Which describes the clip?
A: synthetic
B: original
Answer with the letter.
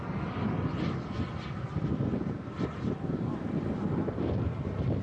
B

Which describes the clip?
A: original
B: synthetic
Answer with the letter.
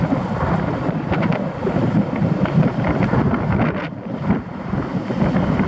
A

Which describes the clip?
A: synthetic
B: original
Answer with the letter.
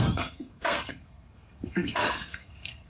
A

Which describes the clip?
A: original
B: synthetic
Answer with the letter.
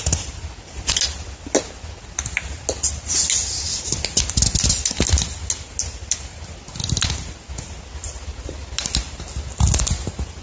A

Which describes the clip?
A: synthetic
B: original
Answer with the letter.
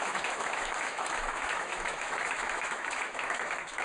A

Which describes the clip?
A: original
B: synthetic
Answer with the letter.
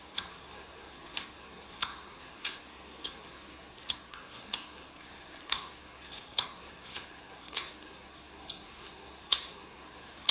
B